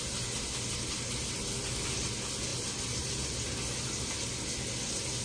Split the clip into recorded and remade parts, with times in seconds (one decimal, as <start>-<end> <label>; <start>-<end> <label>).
0.0-5.2 recorded